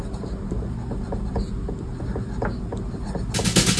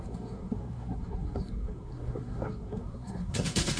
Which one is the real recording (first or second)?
first